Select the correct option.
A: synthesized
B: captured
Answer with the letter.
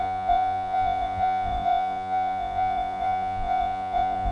A